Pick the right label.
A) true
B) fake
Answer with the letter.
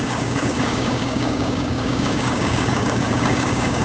B